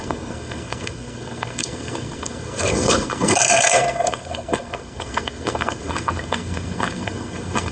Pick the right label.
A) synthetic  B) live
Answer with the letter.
A